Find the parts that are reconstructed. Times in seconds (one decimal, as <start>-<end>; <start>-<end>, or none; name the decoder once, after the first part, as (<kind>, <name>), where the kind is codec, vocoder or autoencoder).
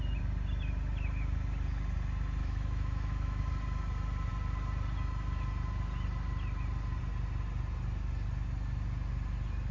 2.4-3.4 (autoencoder, DAC-VAE)